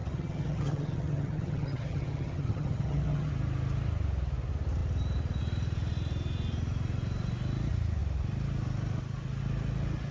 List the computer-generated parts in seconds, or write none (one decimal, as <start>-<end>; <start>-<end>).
0.0-3.3